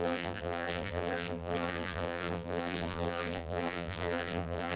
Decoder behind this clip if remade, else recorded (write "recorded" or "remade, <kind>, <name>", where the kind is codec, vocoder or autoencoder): remade, vocoder, BigVGAN v2